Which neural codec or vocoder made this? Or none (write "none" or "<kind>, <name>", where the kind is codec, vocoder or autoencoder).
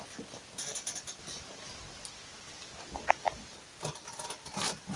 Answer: none